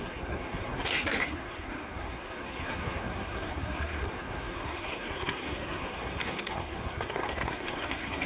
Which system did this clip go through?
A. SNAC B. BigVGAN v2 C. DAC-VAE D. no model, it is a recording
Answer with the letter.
A